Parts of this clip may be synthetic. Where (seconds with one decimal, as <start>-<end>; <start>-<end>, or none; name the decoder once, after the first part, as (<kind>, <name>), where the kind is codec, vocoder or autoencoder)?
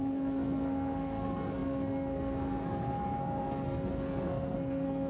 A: 0.0-5.1 (codec, SNAC)